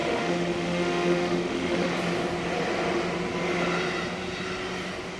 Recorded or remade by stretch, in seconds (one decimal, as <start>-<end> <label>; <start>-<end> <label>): 0.0-1.9 remade; 1.9-5.2 recorded